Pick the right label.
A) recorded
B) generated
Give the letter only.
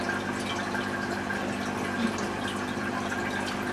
A